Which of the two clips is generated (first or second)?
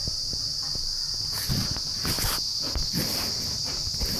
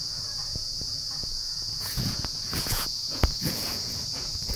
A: second